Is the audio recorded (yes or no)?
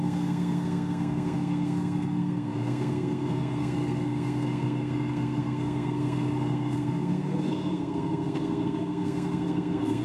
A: no